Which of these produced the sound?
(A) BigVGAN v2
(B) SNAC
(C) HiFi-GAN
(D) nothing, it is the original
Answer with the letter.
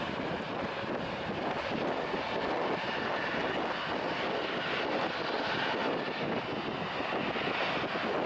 D